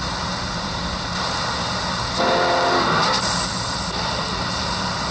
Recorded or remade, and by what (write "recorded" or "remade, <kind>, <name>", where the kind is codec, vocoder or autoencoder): recorded